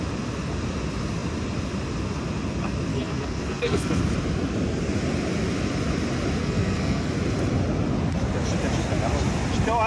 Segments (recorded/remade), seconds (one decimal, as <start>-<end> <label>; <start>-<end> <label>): 0.0-2.9 recorded; 2.9-4.0 remade; 4.0-6.4 recorded; 6.4-7.1 remade; 7.1-9.9 recorded